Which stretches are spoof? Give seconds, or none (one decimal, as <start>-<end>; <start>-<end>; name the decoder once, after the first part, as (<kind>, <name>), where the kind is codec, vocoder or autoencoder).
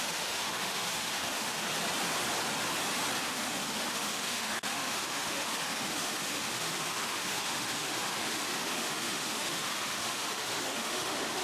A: 0.0-1.7 (autoencoder, DAC-VAE); 3.2-11.4